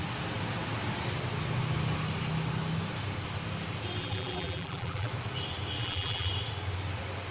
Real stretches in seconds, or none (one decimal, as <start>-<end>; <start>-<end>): 0.0-4.0; 5.1-5.8; 6.3-7.3